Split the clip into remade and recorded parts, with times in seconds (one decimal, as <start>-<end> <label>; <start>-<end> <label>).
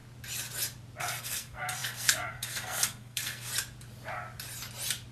0.0-1.0 recorded; 1.0-3.5 remade; 3.5-5.1 recorded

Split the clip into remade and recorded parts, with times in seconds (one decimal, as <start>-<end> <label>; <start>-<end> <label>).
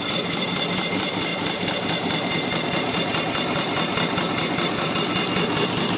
0.0-1.3 recorded; 1.3-4.9 remade; 4.9-6.0 recorded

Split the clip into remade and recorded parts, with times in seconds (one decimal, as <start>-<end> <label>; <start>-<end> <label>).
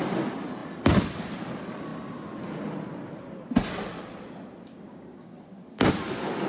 0.0-4.7 recorded; 4.7-5.3 remade; 5.3-6.5 recorded